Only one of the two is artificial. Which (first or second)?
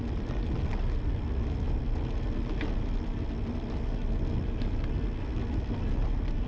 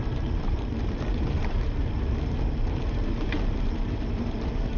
second